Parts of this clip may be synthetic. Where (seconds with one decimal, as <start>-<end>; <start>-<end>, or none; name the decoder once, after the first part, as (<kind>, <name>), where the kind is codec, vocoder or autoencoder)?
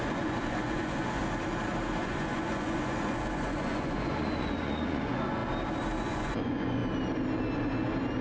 0.0-1.2 (vocoder, Vocos); 2.0-5.4; 6.0-6.8